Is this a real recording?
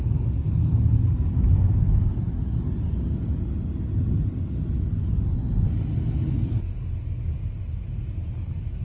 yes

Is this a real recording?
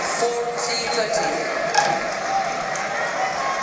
yes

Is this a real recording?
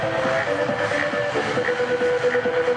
yes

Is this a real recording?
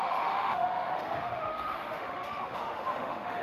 no